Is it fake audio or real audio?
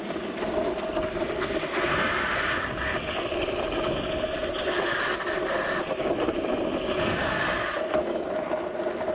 real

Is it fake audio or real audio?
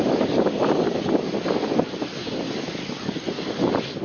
real